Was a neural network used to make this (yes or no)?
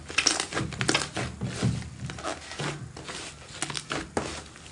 no